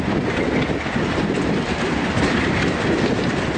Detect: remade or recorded recorded